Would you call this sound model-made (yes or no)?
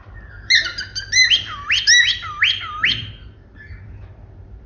no